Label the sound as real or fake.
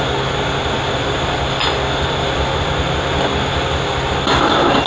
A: real